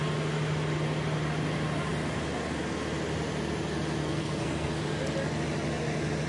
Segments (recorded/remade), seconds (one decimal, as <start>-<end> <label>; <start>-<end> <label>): 0.0-4.0 recorded; 4.0-4.7 remade; 4.7-6.3 recorded